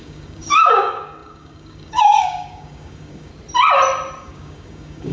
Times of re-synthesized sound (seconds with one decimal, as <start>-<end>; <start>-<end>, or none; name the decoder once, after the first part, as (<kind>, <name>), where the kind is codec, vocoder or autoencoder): 0.0-3.3 (codec, DAC); 4.2-5.1